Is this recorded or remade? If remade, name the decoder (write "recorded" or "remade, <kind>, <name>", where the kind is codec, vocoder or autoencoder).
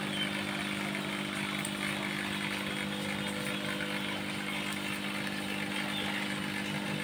recorded